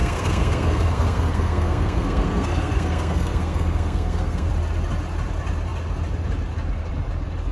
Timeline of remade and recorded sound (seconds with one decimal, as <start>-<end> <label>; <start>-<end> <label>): 0.0-4.5 remade; 4.5-7.5 recorded